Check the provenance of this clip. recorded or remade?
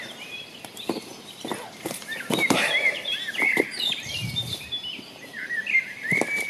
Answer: remade